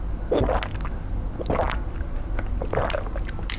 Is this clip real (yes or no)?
yes